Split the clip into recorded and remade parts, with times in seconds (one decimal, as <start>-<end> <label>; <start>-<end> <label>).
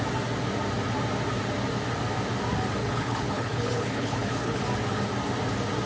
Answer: 0.0-2.8 recorded; 2.8-4.6 remade; 4.6-5.9 recorded